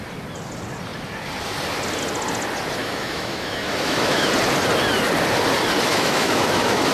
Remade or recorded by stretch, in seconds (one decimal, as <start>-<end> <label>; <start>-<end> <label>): 0.0-2.8 recorded; 2.8-4.3 remade; 4.3-5.9 recorded; 5.9-6.9 remade